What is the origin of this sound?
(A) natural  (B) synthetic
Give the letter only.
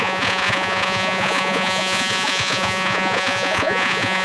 B